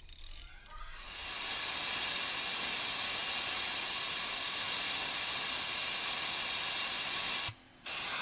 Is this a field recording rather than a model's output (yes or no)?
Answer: yes